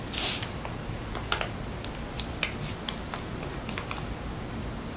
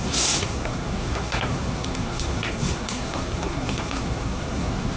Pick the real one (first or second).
first